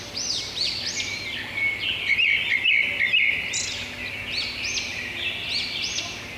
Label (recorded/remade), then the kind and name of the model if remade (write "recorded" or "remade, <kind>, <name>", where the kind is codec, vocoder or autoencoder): recorded